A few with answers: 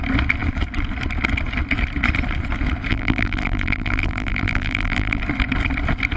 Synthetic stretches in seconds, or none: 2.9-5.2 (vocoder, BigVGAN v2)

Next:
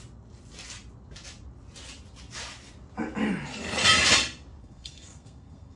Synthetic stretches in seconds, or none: 4.6-5.8 (codec, SNAC)

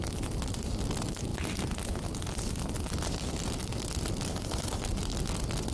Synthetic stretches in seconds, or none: 4.3-4.8 (codec, HILCodec)

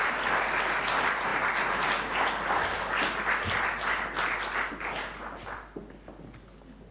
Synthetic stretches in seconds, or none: none

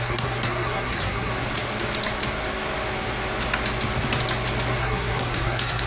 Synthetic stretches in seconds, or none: 0.0-1.3 (codec, SNAC); 4.8-5.9